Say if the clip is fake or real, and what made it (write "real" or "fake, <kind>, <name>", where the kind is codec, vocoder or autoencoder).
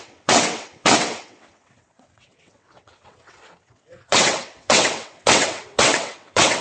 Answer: fake, vocoder, WaveNeXt